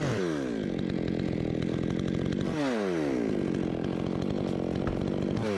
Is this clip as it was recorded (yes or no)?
yes